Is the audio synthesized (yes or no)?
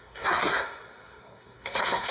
yes